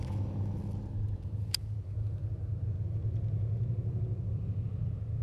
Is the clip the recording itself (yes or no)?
yes